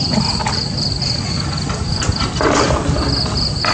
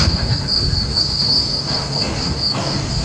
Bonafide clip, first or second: first